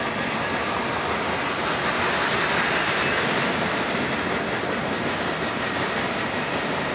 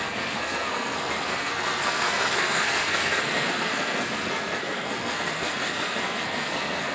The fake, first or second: second